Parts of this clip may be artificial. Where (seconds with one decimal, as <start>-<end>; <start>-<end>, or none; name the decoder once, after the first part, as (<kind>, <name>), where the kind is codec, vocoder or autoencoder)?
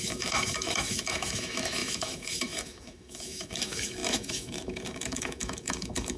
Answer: 0.0-6.2 (autoencoder, DAC-VAE)